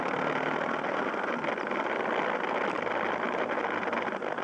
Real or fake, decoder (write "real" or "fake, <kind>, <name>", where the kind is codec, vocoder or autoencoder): real